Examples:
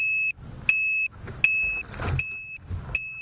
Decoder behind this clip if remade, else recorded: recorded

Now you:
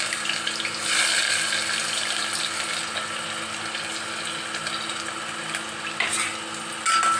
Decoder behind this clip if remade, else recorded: recorded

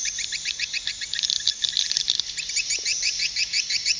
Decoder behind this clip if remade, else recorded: recorded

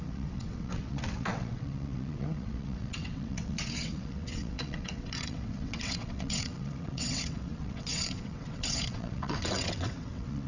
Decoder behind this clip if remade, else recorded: remade, vocoder, WaveNeXt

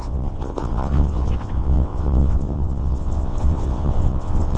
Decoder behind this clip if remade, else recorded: remade, vocoder, WaveNeXt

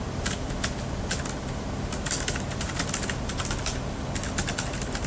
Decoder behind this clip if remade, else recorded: recorded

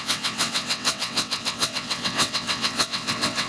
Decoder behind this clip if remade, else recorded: remade, vocoder, WaveNeXt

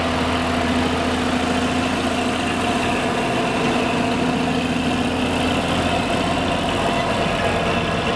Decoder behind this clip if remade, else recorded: recorded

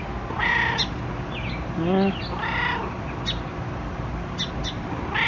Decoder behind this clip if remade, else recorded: recorded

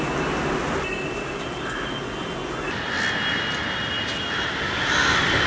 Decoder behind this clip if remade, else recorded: recorded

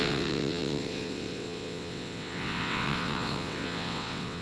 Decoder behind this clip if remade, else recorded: remade, vocoder, WaveNeXt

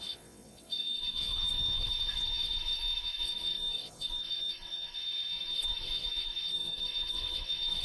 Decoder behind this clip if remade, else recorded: remade, vocoder, WaveNeXt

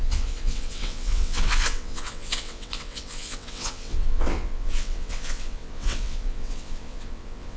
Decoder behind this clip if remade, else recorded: remade, vocoder, WaveNeXt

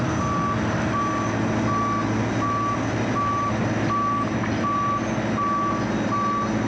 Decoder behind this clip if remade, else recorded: recorded